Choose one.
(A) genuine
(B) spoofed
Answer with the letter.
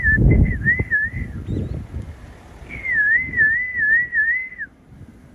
A